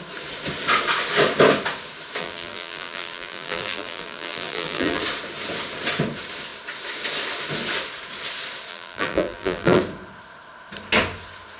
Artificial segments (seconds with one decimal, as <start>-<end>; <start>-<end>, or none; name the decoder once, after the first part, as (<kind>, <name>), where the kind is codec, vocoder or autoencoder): 2.2-5.0 (vocoder, BigVGAN v2); 8.7-9.8